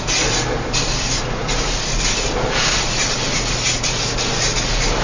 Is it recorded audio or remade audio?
recorded